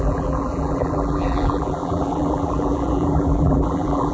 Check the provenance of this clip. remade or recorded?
remade